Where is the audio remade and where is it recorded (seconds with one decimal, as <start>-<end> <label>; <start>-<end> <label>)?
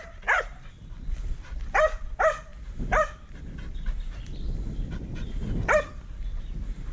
0.0-6.9 recorded